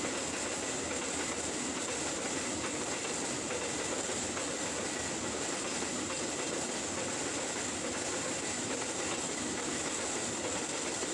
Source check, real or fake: real